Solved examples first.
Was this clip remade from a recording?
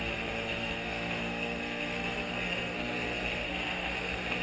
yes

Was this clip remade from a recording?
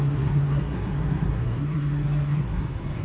yes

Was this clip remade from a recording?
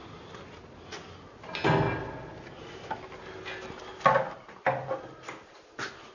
no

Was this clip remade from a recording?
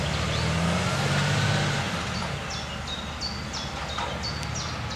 no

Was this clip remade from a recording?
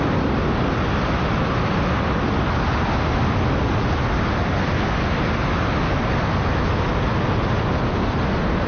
no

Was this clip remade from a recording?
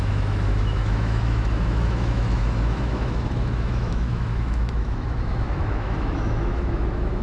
yes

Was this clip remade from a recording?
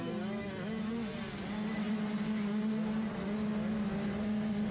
no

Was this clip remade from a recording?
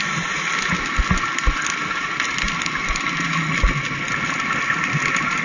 no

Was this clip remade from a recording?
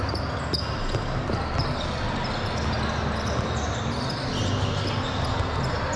no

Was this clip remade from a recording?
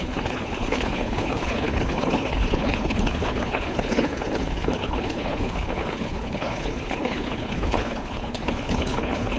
yes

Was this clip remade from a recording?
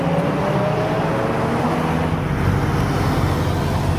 no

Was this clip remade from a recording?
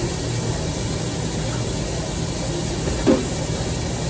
no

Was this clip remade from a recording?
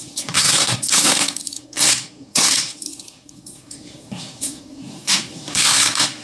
yes